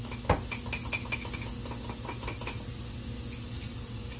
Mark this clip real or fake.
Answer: real